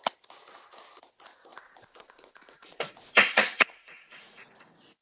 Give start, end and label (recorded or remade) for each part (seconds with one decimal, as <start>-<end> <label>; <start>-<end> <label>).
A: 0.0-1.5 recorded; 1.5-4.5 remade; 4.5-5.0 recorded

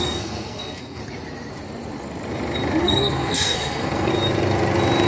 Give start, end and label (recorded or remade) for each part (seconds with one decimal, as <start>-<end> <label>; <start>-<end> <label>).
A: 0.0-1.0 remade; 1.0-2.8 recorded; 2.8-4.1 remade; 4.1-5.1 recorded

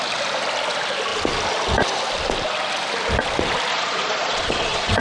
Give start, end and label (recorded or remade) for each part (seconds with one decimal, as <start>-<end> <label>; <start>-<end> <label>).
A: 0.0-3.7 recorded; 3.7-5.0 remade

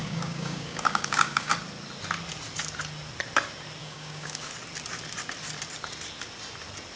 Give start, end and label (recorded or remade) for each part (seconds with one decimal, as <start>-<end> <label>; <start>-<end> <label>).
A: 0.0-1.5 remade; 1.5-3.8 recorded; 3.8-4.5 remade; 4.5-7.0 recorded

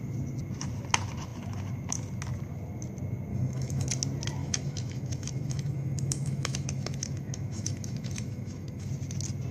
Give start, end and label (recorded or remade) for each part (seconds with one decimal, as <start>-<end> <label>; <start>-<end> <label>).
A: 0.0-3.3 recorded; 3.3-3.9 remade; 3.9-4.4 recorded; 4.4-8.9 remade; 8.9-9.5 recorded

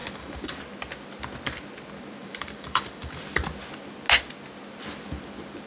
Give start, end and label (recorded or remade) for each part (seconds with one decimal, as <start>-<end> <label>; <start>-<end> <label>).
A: 0.0-0.6 remade; 0.6-2.2 recorded; 2.2-3.2 remade; 3.2-5.7 recorded

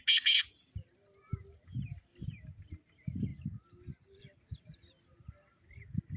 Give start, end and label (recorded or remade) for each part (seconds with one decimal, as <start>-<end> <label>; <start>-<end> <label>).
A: 0.0-2.1 recorded; 2.1-2.7 remade; 2.7-5.5 recorded; 5.5-6.2 remade

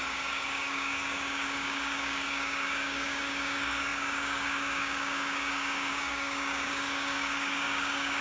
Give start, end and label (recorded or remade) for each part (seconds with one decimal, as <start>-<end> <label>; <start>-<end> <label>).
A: 0.0-8.2 remade